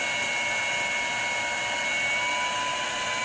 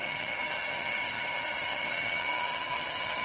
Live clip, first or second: first